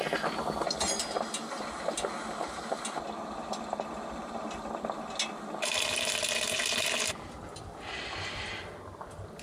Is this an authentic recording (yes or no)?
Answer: yes